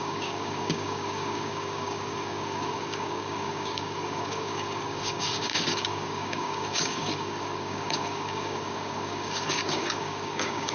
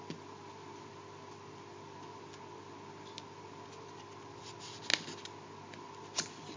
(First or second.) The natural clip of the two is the second